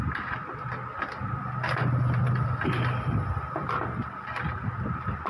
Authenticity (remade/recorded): recorded